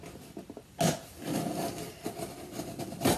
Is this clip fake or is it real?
real